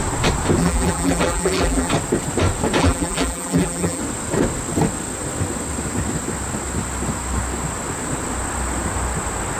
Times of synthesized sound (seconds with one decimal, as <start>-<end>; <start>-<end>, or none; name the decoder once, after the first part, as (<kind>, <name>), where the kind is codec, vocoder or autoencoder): 0.6-1.9 (vocoder, BigVGAN v2); 2.8-4.0